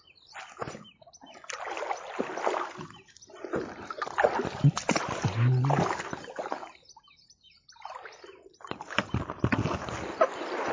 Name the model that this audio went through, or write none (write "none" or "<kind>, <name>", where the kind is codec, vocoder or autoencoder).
none